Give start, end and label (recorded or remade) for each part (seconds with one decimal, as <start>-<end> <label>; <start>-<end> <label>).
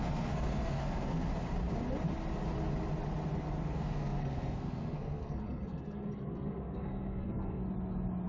0.0-1.3 remade; 1.3-3.6 recorded; 3.6-7.6 remade; 7.6-8.3 recorded